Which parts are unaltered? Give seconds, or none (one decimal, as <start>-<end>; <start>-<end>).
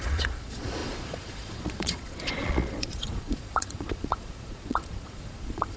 none